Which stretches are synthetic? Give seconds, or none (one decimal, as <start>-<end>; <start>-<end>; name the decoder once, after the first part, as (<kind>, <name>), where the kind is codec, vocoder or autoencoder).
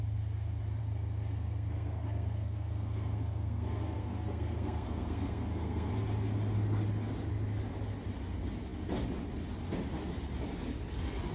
0.8-5.9 (codec, SNAC)